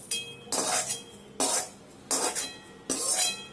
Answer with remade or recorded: recorded